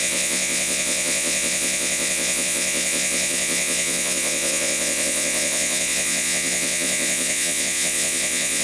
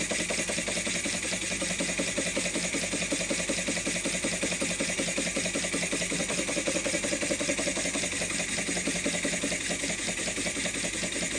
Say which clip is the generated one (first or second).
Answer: first